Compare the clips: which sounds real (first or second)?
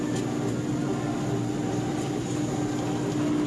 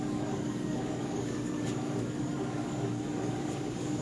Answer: first